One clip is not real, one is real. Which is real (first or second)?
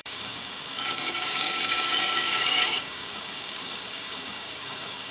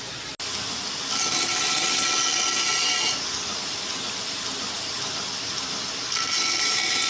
second